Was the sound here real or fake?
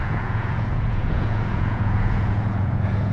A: fake